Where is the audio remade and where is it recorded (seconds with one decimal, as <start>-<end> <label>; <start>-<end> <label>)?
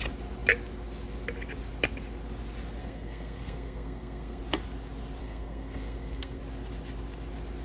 0.0-2.8 recorded; 2.8-4.4 remade; 4.4-5.2 recorded; 5.2-6.4 remade; 6.4-7.6 recorded